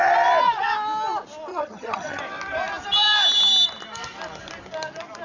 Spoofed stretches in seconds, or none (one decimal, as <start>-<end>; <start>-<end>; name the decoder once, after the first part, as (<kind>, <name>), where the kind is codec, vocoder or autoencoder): 1.5-2.2 (vocoder, HiFi-GAN)